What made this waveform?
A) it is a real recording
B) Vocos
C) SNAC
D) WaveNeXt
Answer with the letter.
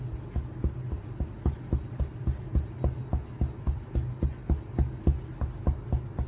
A